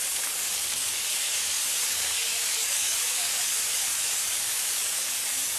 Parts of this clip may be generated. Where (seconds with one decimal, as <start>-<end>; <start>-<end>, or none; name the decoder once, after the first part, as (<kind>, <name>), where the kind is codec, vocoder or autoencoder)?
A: 0.0-5.6 (codec, DAC)